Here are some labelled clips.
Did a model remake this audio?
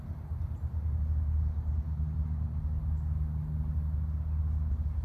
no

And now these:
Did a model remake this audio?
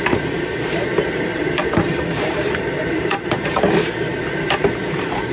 yes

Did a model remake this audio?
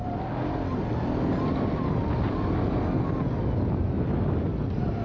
no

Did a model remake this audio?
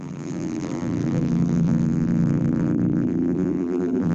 yes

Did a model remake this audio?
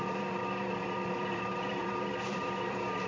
yes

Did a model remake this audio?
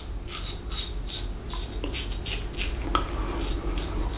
no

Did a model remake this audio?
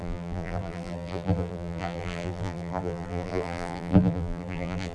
yes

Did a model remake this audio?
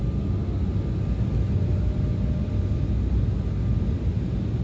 no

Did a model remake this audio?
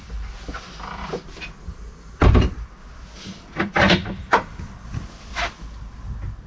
yes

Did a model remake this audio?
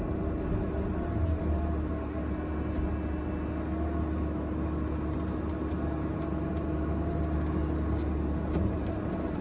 no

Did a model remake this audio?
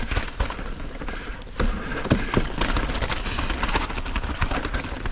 no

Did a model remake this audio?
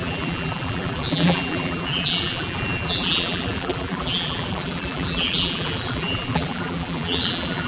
yes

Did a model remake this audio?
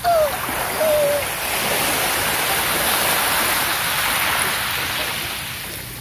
no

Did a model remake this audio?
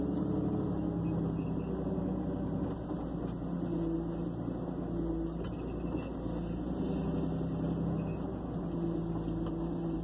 no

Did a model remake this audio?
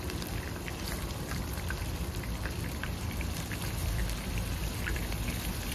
yes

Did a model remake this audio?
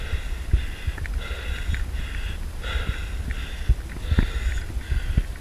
no